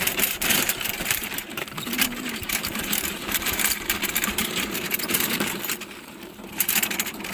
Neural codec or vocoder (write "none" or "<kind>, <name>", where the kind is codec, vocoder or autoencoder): vocoder, BigVGAN v2